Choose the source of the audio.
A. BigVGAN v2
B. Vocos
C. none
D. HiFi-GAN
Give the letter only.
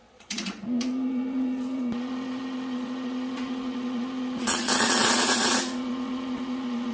B